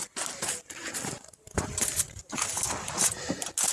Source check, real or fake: real